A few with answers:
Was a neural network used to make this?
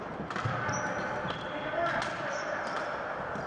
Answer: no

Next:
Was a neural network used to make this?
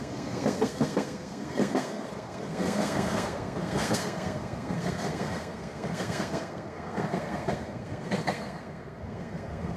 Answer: yes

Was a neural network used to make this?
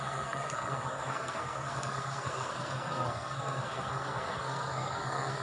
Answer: yes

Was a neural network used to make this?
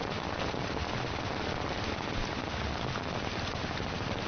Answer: no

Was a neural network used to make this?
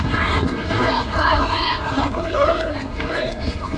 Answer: yes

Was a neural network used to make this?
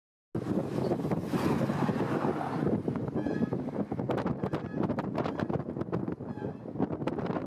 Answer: no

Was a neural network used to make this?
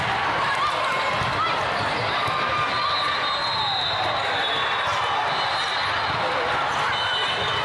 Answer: no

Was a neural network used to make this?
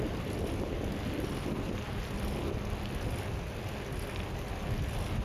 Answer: no